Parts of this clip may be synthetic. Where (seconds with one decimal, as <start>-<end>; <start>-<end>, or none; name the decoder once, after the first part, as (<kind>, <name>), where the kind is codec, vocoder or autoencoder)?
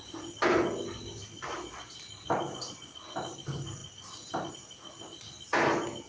none